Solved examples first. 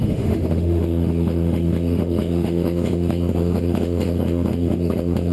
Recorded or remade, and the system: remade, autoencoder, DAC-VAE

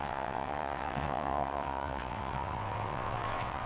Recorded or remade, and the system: remade, vocoder, WaveNeXt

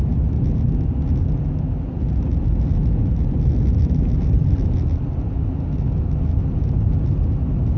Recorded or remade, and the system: recorded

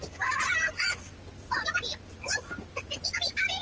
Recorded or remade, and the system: recorded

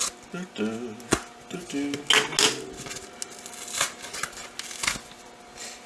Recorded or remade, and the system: recorded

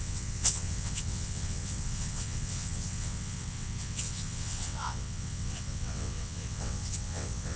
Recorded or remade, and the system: remade, vocoder, WaveNeXt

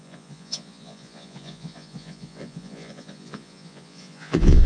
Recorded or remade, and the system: remade, vocoder, Vocos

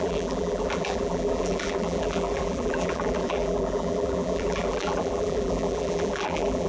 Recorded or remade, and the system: remade, vocoder, BigVGAN v2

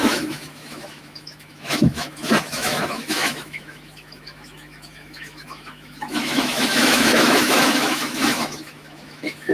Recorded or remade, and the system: remade, autoencoder, DAC-VAE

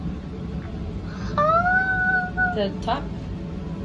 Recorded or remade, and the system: recorded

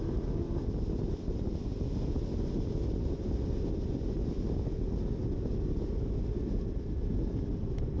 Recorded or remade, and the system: recorded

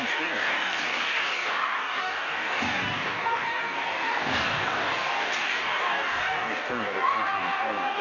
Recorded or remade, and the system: remade, codec, DAC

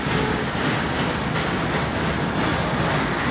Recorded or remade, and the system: recorded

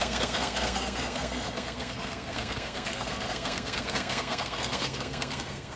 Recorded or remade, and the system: remade, codec, SNAC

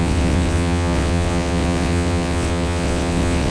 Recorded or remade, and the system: remade, vocoder, WaveNeXt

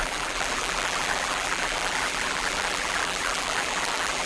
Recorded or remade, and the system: remade, vocoder, BigVGAN v2